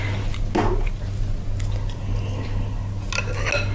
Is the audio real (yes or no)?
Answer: yes